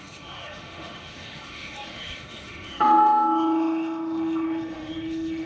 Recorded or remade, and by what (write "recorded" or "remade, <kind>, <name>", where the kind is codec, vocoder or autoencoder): remade, autoencoder, DAC-VAE